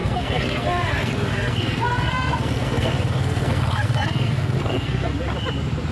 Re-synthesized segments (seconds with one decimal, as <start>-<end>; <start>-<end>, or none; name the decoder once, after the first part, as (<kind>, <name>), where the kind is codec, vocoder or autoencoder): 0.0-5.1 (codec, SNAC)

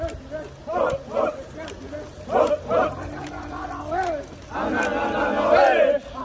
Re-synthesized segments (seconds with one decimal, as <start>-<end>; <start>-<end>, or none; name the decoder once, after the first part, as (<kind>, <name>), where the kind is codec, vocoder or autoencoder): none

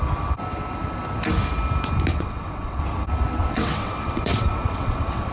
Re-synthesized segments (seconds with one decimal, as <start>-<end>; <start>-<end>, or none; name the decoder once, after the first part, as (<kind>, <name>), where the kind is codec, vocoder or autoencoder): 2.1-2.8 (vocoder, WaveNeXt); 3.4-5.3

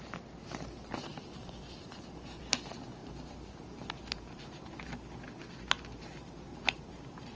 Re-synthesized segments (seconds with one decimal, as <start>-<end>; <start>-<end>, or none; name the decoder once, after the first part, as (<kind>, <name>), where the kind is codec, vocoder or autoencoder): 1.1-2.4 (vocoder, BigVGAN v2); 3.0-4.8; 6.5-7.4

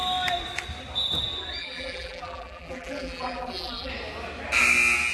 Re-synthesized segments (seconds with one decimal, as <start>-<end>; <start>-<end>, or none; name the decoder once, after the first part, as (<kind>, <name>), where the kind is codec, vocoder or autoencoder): 1.6-3.9 (vocoder, BigVGAN v2)

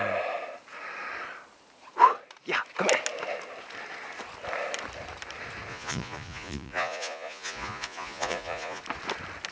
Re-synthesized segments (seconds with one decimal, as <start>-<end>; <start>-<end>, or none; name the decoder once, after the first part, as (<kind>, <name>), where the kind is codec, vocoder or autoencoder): 5.7-8.8 (vocoder, Vocos)

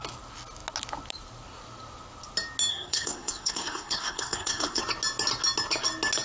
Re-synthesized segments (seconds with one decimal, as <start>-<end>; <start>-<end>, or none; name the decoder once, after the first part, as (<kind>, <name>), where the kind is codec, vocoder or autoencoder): 2.7-4.8 (codec, SNAC)

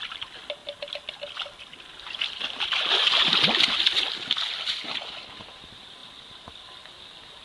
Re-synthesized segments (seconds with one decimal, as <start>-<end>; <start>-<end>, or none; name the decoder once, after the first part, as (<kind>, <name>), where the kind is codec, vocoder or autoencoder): 6.0-6.6 (vocoder, BigVGAN v2)